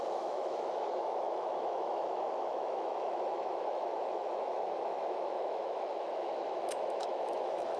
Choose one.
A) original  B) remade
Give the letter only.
B